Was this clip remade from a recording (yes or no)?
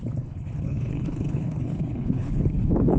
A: yes